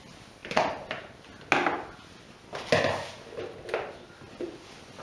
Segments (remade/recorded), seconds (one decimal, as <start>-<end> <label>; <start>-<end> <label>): 0.0-5.0 recorded

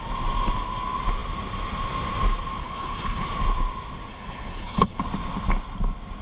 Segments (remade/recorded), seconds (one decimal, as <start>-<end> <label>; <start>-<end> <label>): 0.0-2.6 recorded; 2.6-3.3 remade; 3.3-4.1 recorded; 4.1-5.0 remade; 5.0-6.2 recorded

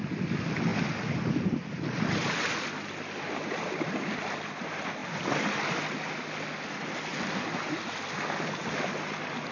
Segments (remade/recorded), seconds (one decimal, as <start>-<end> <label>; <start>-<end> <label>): 0.0-9.5 recorded

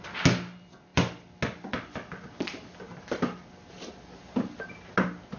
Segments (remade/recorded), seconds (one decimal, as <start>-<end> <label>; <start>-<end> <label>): 0.0-5.4 recorded

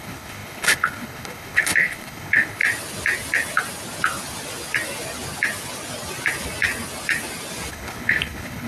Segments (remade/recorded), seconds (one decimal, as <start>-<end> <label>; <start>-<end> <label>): 0.0-2.6 remade; 2.6-7.7 recorded; 7.7-8.7 remade

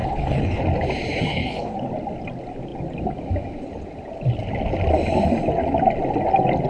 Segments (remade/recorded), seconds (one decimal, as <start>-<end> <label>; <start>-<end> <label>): 0.0-0.6 remade; 0.6-1.3 recorded; 1.3-1.9 remade; 1.9-6.7 recorded

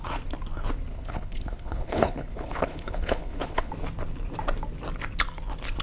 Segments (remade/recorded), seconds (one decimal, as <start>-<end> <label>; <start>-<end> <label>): 0.0-0.9 recorded; 0.9-3.7 remade; 3.7-5.8 recorded

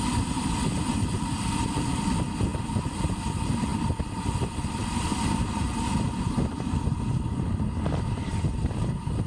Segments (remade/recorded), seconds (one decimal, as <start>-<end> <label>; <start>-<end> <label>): 0.0-9.3 recorded